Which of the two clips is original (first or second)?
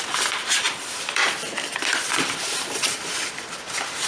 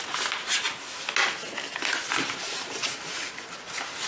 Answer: second